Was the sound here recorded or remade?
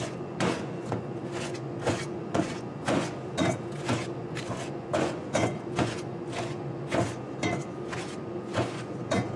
remade